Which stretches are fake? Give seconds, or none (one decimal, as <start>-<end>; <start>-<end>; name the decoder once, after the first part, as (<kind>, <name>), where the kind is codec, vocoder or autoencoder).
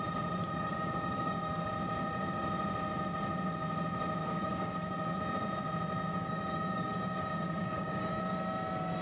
0.4-1.7 (codec, DAC); 4.2-5.2; 6.1-8.2